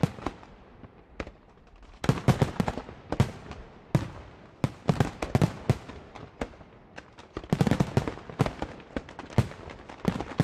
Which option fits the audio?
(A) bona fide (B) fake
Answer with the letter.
A